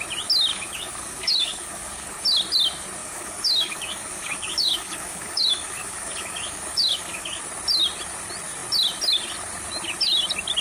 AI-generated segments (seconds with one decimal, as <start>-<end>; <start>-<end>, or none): 0.5-2.2; 3.0-7.4